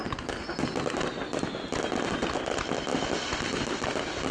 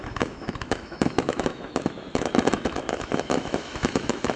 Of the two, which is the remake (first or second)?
second